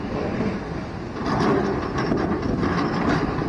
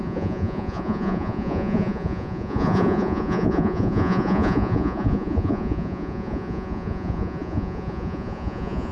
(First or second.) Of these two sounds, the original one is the first